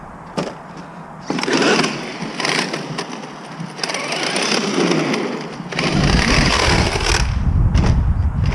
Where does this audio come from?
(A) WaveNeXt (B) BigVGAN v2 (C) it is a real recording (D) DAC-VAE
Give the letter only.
C